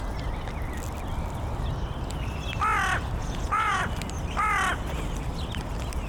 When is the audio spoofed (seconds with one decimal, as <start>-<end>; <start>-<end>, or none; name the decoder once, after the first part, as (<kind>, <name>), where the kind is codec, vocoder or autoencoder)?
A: 3.2-3.8 (vocoder, Vocos)